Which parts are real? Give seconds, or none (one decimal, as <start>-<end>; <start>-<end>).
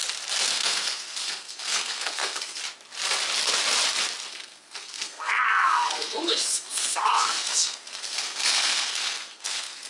0.0-0.5; 2.6-4.3